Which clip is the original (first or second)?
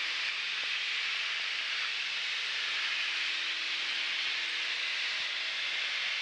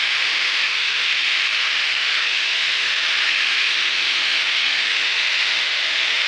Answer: first